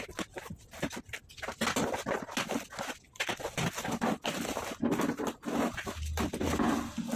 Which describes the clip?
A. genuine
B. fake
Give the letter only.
A